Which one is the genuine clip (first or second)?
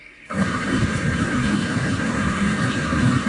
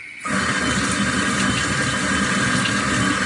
second